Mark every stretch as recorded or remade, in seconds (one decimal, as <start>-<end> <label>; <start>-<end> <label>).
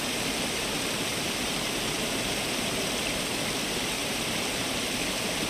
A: 0.0-4.0 remade; 4.0-5.5 recorded